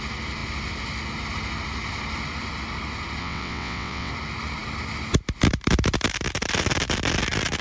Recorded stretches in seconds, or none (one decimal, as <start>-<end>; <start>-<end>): 0.0-3.2; 4.1-7.6